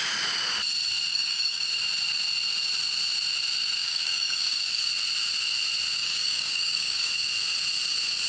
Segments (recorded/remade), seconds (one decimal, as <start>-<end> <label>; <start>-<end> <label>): 0.0-1.1 recorded; 1.1-1.7 remade; 1.7-3.8 recorded; 3.8-4.9 remade; 4.9-6.0 recorded; 6.0-7.1 remade; 7.1-8.3 recorded